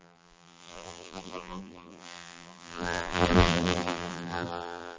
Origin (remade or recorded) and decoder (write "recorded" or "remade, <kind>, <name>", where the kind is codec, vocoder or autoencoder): remade, vocoder, BigVGAN v2